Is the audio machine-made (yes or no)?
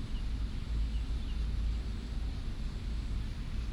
no